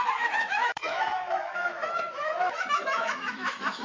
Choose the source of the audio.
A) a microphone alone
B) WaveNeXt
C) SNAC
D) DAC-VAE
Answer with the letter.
D